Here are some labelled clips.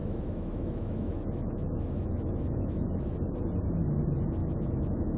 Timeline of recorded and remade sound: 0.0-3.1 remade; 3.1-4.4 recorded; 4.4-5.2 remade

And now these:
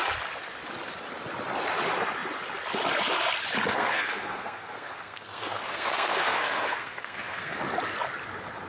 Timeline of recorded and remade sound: 0.0-3.7 recorded; 3.7-7.6 remade; 7.6-8.7 recorded

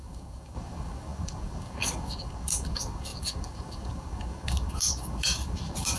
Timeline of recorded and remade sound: 0.0-6.0 remade

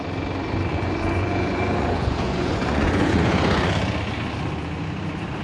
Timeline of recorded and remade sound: 0.0-0.7 recorded; 0.7-3.7 remade; 3.7-5.4 recorded